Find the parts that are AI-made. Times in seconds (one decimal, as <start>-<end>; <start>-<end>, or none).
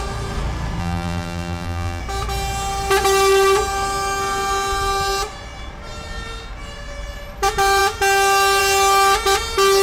0.8-2.0